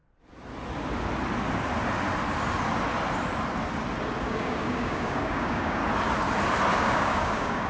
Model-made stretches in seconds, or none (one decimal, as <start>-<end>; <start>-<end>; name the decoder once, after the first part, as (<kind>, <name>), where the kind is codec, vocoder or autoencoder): 4.2-5.8 (codec, DAC); 6.8-7.7